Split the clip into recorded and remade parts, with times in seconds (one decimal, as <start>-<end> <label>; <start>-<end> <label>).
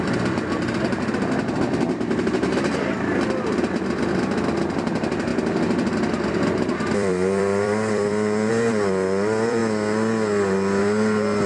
0.0-9.6 remade; 9.6-10.8 recorded; 10.8-11.5 remade